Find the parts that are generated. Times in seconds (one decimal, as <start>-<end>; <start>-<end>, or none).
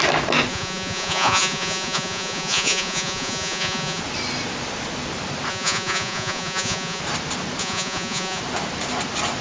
0.5-4.0; 5.5-7.0; 7.6-8.4